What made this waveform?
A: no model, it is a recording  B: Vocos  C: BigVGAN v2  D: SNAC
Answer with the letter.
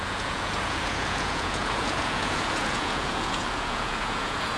B